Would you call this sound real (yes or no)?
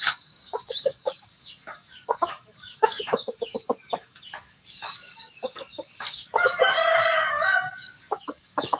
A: no